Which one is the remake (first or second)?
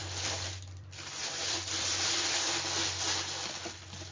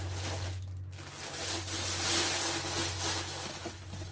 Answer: first